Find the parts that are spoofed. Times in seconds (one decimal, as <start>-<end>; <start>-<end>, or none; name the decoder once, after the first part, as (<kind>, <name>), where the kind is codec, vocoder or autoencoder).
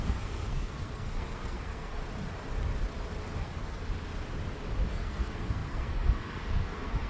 0.0-2.0 (codec, SNAC); 3.4-3.8; 4.9-7.1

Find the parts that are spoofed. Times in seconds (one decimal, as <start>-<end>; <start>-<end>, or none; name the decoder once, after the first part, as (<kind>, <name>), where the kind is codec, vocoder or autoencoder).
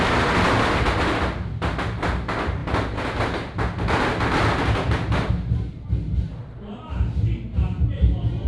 none